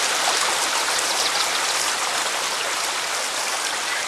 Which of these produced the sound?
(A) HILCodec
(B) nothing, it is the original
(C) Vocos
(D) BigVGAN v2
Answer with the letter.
B